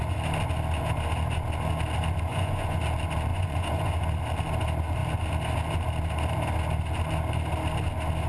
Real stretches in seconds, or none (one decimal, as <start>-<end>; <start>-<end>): 0.0-2.3; 2.8-3.3; 3.9-8.3